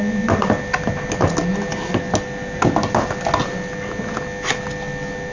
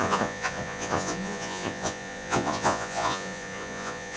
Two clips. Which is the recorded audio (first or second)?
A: first